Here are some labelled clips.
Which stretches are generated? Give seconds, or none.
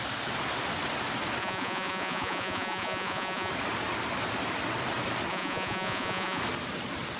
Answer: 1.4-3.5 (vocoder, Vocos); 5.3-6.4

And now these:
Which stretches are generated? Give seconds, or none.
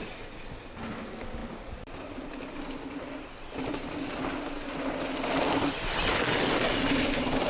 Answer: none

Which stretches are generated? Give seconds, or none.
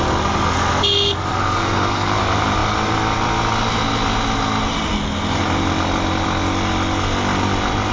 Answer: 1.3-2.2 (codec, DAC)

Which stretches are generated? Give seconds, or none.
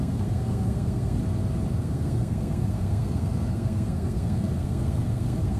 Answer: 0.0-1.2 (codec, SNAC); 1.7-5.6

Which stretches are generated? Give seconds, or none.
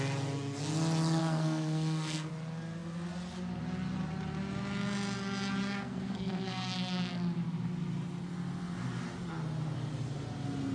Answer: 1.2-2.3 (codec, SNAC); 5.6-7.1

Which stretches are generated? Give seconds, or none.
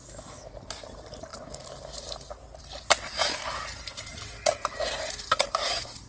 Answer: 0.0-0.5 (autoencoder, DAC-VAE)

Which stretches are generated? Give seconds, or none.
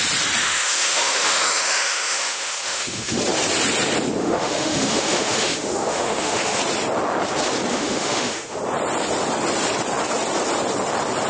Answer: 0.4-3.2 (autoencoder, DAC-VAE); 4.2-6.6; 7.7-8.6